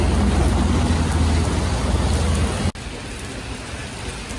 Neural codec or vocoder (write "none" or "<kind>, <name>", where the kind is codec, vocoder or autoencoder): none